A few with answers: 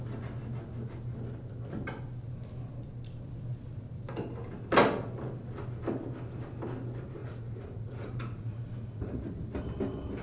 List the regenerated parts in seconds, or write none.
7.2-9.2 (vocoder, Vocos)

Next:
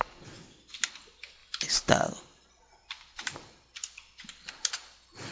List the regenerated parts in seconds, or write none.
1.4-4.5 (vocoder, BigVGAN v2)

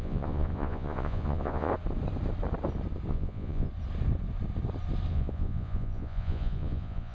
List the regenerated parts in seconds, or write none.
0.0-1.7 (vocoder, Vocos); 3.1-3.7; 5.1-7.1

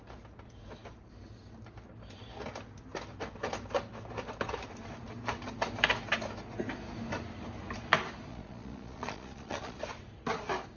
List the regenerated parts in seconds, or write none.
8.3-9.8 (vocoder, Vocos)